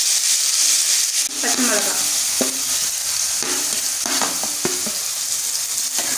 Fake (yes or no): no